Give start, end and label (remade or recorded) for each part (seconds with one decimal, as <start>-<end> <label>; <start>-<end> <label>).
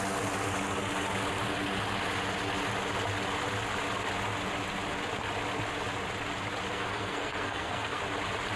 0.0-6.7 recorded; 6.7-8.0 remade; 8.0-8.6 recorded